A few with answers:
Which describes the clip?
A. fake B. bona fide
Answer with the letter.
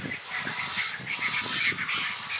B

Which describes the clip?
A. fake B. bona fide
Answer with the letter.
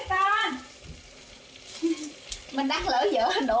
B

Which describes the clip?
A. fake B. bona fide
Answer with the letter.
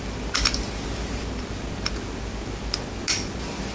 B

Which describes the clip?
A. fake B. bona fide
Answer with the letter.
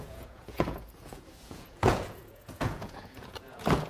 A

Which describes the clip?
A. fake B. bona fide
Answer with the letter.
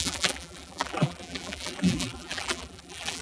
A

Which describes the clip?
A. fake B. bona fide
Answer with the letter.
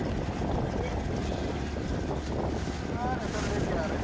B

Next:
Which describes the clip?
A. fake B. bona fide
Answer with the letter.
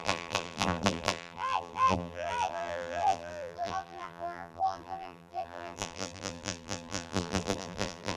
A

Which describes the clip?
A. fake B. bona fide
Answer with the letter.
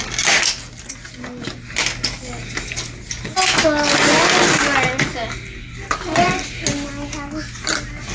B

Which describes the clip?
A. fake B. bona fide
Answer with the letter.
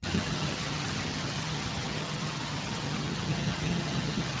A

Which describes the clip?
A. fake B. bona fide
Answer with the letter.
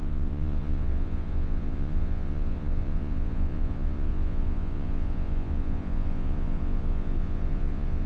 A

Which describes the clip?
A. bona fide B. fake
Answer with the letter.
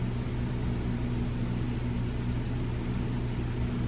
A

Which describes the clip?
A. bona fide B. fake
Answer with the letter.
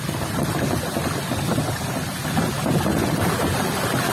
A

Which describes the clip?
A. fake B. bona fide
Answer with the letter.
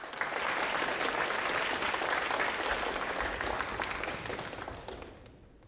B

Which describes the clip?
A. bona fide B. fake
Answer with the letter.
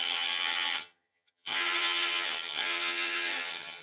B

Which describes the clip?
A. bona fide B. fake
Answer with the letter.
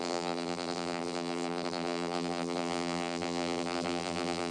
B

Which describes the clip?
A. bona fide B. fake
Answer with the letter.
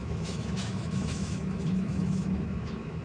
B